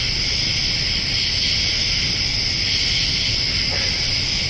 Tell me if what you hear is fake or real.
real